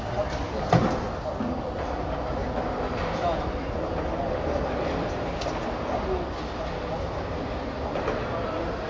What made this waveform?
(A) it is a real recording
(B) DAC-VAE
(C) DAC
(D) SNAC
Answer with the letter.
A